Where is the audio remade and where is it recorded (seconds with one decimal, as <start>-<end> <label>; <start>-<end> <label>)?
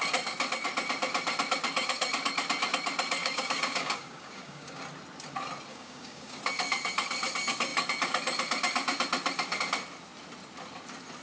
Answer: 0.0-3.2 recorded; 3.2-4.8 remade; 4.8-5.7 recorded; 5.7-6.4 remade; 6.4-11.2 recorded